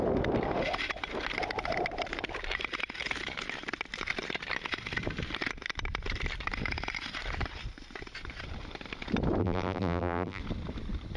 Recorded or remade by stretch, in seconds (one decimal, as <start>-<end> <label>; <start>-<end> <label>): 0.0-9.4 recorded; 9.4-10.4 remade; 10.4-11.2 recorded